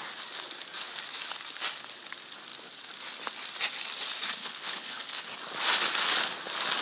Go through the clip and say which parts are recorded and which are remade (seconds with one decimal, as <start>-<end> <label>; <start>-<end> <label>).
0.0-4.4 recorded; 4.4-5.2 remade; 5.2-6.8 recorded